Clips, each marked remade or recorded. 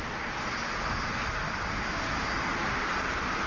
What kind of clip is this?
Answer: recorded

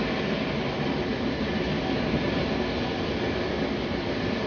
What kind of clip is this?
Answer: recorded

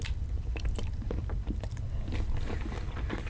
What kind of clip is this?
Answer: recorded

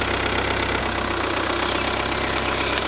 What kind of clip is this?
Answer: recorded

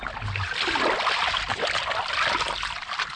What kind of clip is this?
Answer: recorded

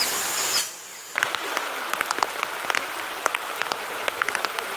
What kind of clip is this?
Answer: recorded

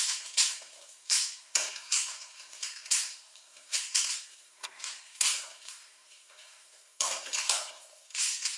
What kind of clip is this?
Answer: remade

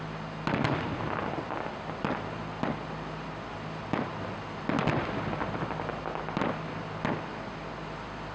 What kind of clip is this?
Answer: recorded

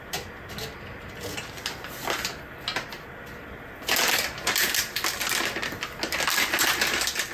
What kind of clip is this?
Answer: recorded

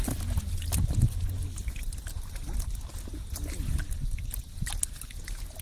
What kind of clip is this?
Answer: recorded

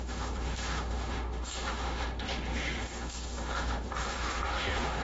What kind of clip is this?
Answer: remade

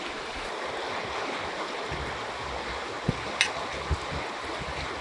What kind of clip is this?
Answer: recorded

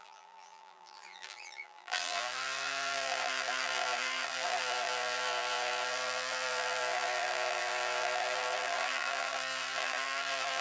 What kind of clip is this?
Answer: remade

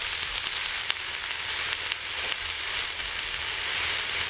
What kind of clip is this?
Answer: recorded